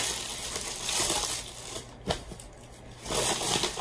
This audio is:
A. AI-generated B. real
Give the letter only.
B